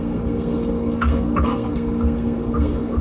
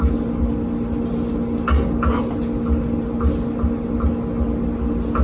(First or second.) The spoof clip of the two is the first